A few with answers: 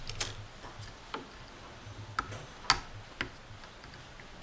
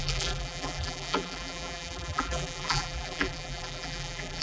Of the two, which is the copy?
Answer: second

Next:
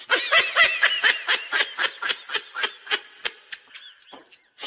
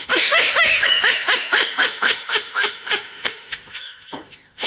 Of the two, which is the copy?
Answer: second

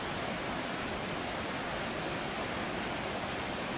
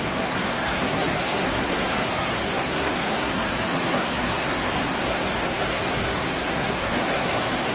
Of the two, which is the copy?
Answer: second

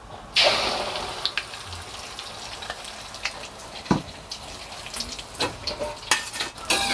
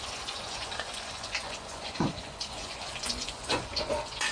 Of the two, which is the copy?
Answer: second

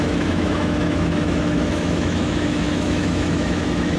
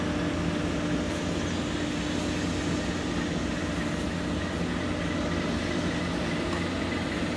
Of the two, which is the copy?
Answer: first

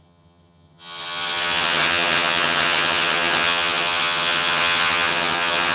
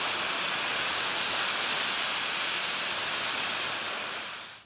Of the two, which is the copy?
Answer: first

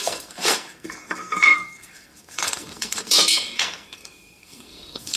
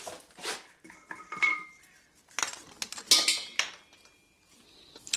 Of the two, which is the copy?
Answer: first